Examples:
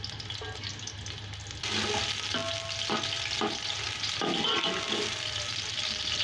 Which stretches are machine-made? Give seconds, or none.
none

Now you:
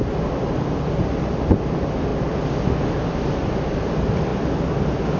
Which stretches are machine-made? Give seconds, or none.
none

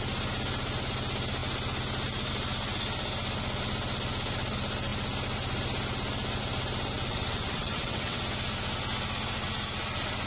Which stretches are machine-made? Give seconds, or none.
7.1-8.2 (vocoder, WaveNeXt)

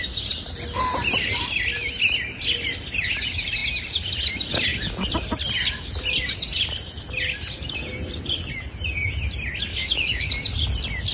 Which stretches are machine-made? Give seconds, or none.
9.7-10.3 (codec, DAC)

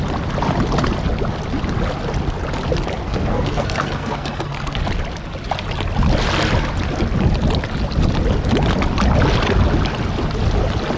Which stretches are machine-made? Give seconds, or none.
3.0-4.8 (codec, SNAC)

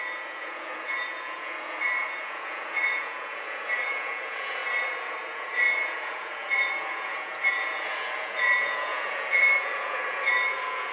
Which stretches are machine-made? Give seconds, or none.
0.0-10.9 (vocoder, Vocos)

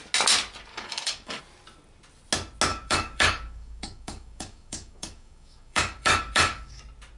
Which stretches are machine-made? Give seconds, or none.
0.7-1.4 (codec, DAC); 2.7-6.8

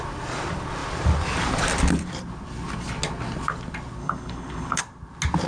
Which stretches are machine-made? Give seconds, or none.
4.0-4.8 (codec, HILCodec)